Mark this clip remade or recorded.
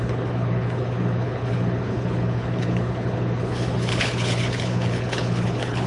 remade